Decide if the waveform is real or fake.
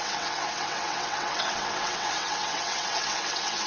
fake